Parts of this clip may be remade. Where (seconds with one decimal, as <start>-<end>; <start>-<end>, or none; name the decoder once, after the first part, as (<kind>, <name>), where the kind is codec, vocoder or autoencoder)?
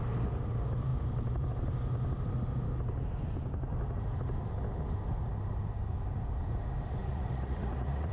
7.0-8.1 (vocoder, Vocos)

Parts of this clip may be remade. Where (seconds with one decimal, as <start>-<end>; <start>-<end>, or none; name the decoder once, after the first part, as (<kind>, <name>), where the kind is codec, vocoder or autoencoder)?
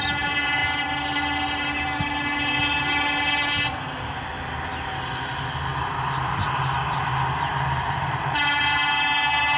0.6-4.1 (vocoder, BigVGAN v2); 4.7-5.3; 7.5-8.6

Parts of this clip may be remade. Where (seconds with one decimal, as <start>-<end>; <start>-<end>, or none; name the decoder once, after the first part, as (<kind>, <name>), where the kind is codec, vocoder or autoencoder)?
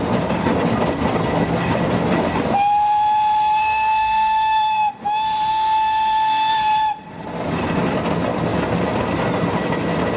3.6-4.9 (codec, SNAC); 5.5-6.5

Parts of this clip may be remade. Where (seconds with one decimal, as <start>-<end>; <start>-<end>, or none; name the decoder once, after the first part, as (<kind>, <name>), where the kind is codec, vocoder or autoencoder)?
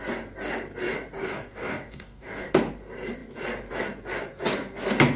1.2-2.5 (codec, DAC)